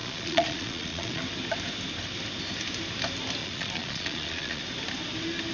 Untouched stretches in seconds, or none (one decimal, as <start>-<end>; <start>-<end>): 1.2-3.4; 4.6-5.5